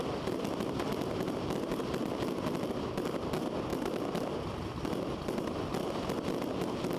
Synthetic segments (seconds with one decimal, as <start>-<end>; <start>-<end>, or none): 3.7-4.4